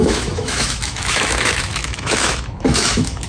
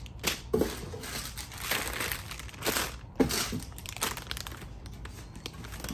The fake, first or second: first